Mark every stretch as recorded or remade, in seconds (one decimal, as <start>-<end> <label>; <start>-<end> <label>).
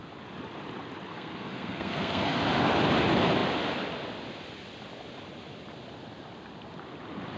0.0-1.1 recorded; 1.1-2.4 remade; 2.4-7.4 recorded